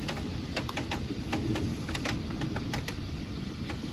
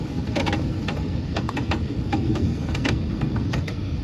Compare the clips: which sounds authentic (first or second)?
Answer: first